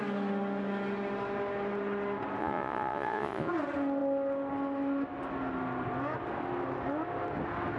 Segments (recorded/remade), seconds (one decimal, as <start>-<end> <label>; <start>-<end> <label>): 0.0-2.4 recorded; 2.4-3.5 remade; 3.5-7.8 recorded